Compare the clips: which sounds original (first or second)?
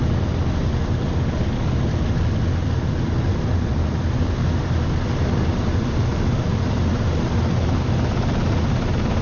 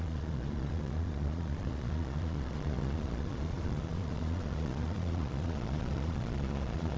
first